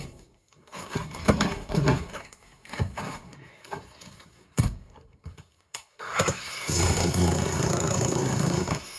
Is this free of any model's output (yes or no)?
no